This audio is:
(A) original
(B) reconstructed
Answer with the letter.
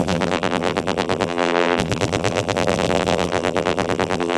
B